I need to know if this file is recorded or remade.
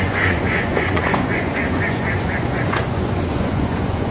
remade